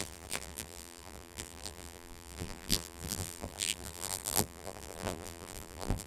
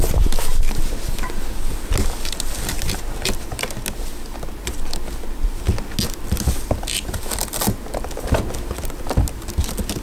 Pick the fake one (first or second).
first